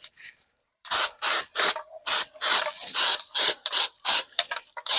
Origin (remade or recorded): remade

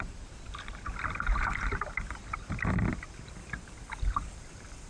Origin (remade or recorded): remade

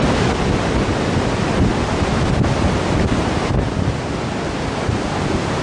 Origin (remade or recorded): recorded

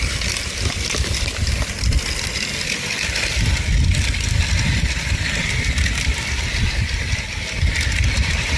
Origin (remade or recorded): recorded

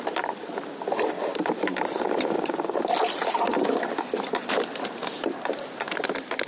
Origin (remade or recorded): recorded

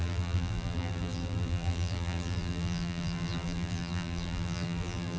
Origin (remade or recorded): remade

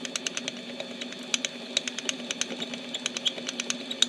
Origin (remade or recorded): recorded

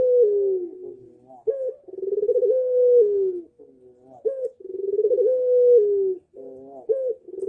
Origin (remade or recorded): recorded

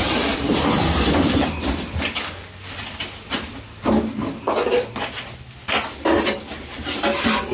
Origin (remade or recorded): remade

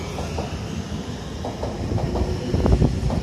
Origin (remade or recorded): recorded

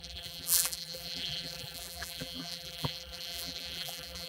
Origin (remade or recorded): remade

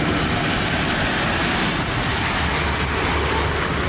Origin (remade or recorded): remade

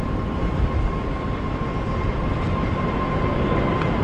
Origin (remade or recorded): recorded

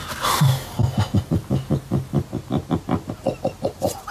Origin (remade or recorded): recorded